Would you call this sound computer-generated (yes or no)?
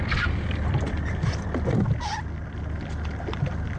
no